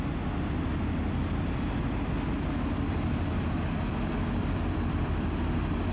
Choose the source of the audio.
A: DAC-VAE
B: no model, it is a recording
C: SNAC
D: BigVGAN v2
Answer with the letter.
B